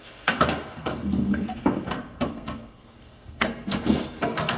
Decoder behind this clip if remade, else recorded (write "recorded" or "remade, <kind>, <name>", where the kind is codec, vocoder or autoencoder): remade, codec, SNAC